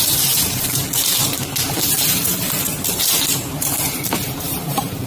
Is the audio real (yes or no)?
no